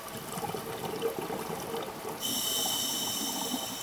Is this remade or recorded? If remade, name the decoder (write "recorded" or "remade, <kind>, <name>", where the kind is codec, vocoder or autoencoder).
recorded